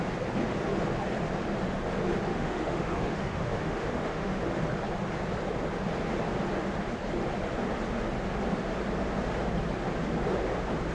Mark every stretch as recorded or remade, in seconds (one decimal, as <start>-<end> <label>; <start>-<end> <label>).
0.0-2.3 recorded; 2.3-4.4 remade; 4.4-10.9 recorded